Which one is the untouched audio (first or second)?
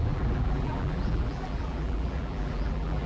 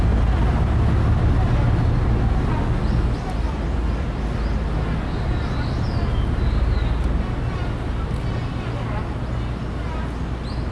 second